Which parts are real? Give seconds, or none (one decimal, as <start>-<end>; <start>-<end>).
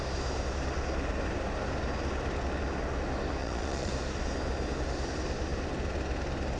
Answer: 0.0-3.4; 3.9-6.6